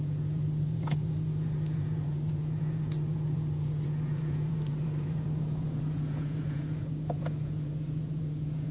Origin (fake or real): fake